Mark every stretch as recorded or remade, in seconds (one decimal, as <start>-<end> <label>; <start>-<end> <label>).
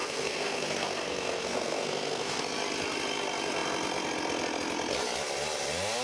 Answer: 0.0-2.4 remade; 2.4-6.0 recorded